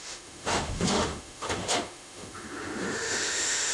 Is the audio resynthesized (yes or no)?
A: yes